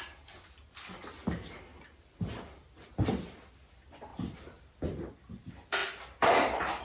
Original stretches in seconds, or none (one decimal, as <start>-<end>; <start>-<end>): 0.0-1.7; 3.5-4.1; 4.7-6.8

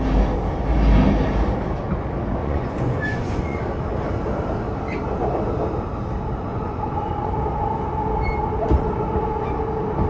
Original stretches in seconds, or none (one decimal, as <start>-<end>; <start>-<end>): 0.0-2.4; 3.6-6.5; 7.3-10.1

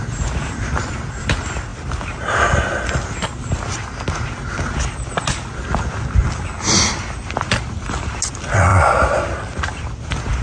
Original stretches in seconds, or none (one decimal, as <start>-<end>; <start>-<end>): 0.0-10.4

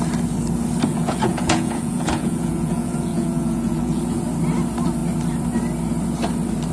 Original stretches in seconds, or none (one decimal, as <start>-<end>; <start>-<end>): 0.0-0.9; 4.0-6.7